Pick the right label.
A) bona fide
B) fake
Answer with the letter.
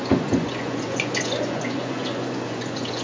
B